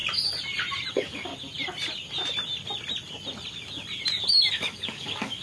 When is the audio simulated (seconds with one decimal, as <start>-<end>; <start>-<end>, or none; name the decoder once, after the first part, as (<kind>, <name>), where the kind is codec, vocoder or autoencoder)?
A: 0.9-1.3 (codec, DAC); 4.5-5.4